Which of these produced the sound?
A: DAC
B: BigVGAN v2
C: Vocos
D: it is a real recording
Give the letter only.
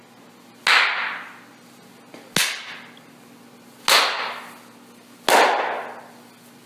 D